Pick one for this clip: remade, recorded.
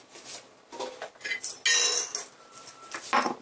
recorded